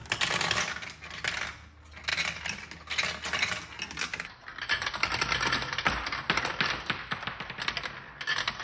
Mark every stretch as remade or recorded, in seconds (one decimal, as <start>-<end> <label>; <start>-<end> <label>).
0.0-8.6 recorded